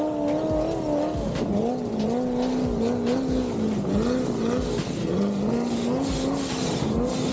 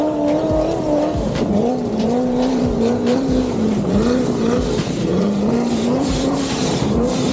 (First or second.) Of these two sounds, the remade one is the second